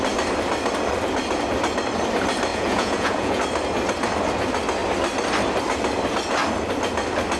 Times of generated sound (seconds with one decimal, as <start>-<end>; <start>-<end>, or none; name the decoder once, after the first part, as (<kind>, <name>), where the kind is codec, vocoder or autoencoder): 2.5-3.4 (vocoder, Vocos)